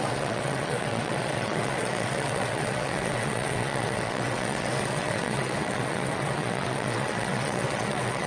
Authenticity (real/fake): fake